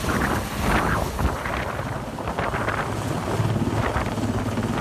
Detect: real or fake real